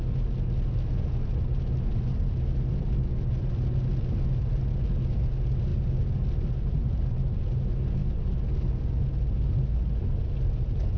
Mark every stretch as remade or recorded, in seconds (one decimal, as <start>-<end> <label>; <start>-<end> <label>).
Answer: 0.0-11.0 recorded